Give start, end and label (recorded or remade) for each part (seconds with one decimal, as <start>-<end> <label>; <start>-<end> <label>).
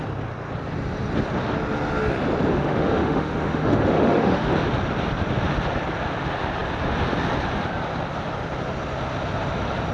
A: 0.0-2.5 recorded; 2.5-4.5 remade; 4.5-9.9 recorded